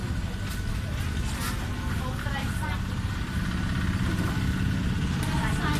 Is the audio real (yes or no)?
yes